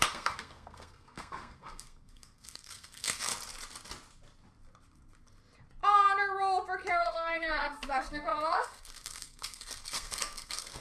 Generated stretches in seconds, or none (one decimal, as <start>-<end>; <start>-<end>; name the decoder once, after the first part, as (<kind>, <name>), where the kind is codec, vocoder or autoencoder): 0.0-3.3 (codec, SNAC); 6.9-10.8